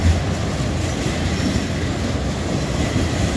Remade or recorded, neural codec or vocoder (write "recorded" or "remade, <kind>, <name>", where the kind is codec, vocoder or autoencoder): recorded